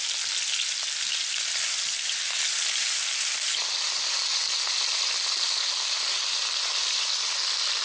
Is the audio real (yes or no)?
yes